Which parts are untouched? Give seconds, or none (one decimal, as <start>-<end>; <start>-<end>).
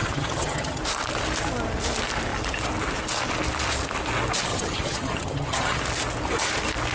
0.8-4.5; 5.8-6.9